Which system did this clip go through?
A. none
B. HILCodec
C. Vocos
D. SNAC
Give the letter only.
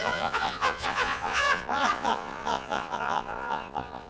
C